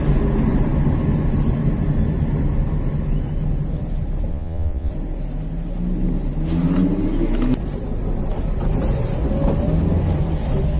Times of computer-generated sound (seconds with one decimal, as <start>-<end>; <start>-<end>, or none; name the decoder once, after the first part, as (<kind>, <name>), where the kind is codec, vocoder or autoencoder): 4.3-4.9 (vocoder, Vocos)